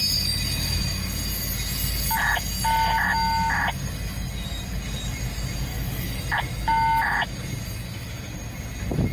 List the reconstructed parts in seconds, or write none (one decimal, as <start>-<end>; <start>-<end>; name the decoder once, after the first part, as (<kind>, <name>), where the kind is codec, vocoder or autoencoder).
5.7-6.2 (autoencoder, DAC-VAE)